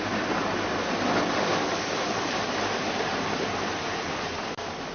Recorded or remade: recorded